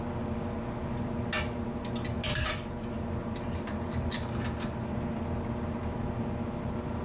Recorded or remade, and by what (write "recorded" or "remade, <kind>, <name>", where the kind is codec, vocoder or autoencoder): recorded